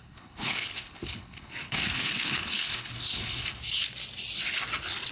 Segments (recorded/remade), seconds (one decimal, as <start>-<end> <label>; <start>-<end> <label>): 0.0-3.6 remade; 3.6-5.1 recorded